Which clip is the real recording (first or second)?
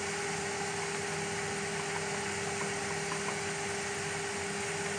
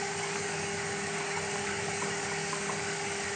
first